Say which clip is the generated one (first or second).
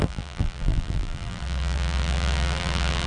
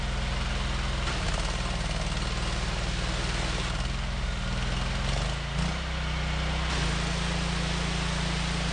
first